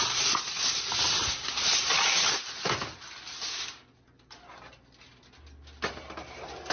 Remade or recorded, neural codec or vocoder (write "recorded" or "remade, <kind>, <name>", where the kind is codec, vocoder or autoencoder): recorded